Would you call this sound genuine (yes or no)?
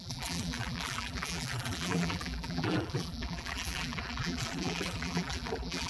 no